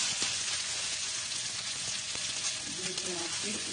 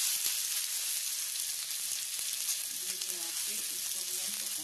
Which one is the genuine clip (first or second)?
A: second